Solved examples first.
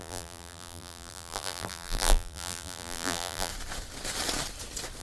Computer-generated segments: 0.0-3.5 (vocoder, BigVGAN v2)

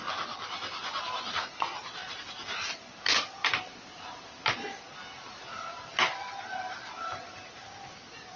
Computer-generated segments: none

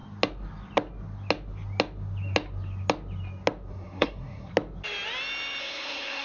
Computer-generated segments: 3.7-4.5 (codec, SNAC); 5.6-6.2

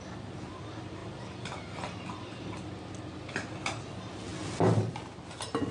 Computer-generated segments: 1.0-2.7 (vocoder, BigVGAN v2)

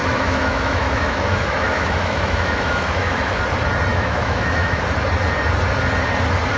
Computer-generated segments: 0.0-3.4 (autoencoder, DAC-VAE); 3.9-4.8

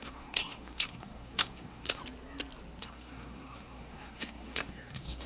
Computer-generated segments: 0.0-2.0 (codec, SNAC); 2.8-5.3

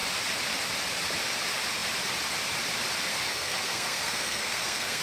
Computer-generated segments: 3.1-5.0 (codec, SNAC)